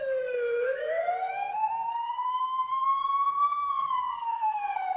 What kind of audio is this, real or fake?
fake